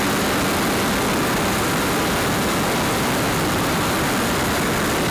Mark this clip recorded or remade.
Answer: recorded